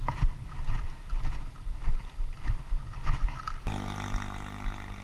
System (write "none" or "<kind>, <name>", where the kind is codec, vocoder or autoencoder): none